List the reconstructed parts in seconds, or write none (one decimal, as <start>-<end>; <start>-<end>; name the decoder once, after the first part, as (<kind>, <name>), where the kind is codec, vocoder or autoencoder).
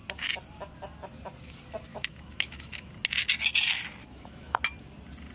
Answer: 1.9-2.9 (autoencoder, DAC-VAE); 4.0-4.6